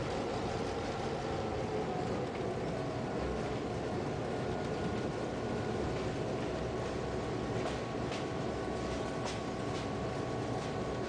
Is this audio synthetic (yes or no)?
no